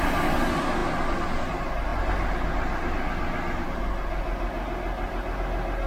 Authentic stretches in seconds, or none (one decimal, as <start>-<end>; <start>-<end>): 0.0-5.9